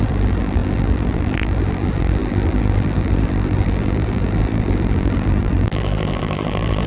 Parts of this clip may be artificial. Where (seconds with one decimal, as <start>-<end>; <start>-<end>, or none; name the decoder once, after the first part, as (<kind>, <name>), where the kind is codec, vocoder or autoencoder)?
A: 0.0-6.9 (vocoder, BigVGAN v2)